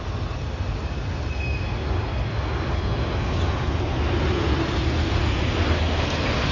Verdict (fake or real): real